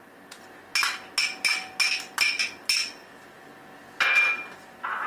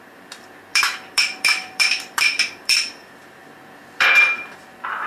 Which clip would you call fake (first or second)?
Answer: second